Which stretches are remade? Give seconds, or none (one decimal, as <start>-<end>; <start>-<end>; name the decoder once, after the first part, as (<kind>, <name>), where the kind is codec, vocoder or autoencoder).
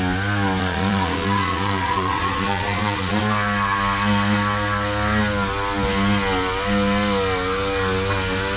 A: 0.6-3.2 (vocoder, Vocos)